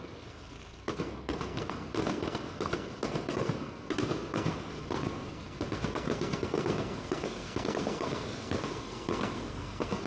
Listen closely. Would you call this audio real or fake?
fake